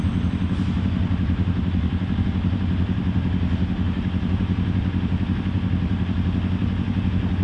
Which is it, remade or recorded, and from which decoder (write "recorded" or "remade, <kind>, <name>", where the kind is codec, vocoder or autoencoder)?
recorded